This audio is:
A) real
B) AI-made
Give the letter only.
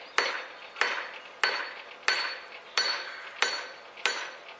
A